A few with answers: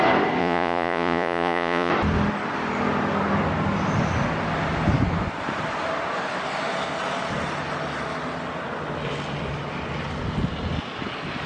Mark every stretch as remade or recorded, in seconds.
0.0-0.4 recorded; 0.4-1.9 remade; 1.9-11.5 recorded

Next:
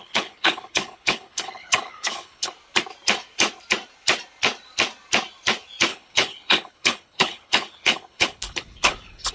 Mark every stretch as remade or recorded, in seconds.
0.0-2.5 remade; 2.5-5.9 recorded; 5.9-9.3 remade